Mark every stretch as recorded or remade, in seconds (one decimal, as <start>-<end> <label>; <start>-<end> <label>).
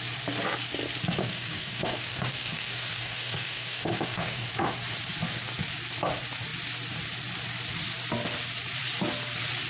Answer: 0.0-1.2 recorded; 1.2-4.5 remade; 4.5-9.7 recorded